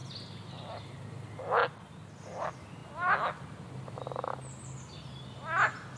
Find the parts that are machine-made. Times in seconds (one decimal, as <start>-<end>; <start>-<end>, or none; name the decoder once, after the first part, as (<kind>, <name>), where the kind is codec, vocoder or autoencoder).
none